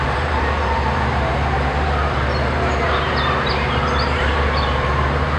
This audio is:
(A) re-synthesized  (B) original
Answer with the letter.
A